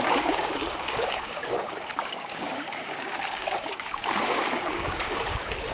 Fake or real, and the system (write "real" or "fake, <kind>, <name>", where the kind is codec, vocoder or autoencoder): fake, codec, DAC